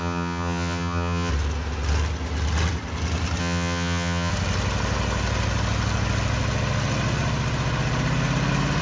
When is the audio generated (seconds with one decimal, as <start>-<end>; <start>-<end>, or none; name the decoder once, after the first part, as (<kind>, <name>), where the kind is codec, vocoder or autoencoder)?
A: 0.0-1.3 (vocoder, HiFi-GAN); 3.4-4.3